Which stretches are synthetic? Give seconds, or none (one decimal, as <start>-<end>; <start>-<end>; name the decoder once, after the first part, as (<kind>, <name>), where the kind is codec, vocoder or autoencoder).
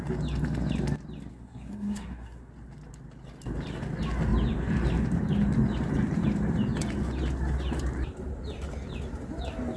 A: 1.3-2.5 (codec, SNAC)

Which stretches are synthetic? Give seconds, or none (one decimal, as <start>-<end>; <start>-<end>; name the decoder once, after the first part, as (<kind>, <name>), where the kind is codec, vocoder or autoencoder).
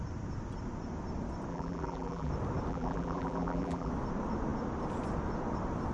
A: 1.5-2.3 (vocoder, BigVGAN v2); 2.7-3.9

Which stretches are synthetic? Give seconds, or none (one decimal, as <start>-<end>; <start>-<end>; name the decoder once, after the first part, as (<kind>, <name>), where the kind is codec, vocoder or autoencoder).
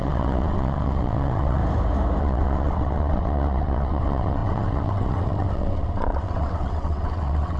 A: 0.0-1.6 (vocoder, WaveNeXt); 2.2-7.6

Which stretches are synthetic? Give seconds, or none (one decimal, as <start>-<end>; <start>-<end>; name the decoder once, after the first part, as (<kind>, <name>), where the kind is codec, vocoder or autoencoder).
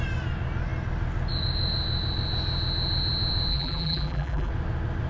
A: 3.5-4.5 (vocoder, BigVGAN v2)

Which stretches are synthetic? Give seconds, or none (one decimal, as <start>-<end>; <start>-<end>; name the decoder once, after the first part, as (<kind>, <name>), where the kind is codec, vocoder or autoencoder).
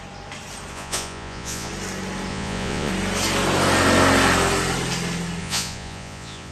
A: 0.7-1.7 (vocoder, Vocos); 2.3-2.9; 5.4-6.5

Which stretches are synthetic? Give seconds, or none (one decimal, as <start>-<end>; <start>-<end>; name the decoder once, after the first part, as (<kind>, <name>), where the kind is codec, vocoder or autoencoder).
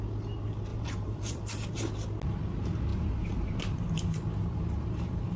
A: 0.7-1.4 (vocoder, BigVGAN v2); 2.9-5.4